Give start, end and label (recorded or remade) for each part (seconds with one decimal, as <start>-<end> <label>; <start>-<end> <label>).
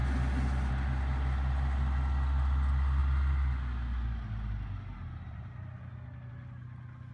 0.0-7.1 recorded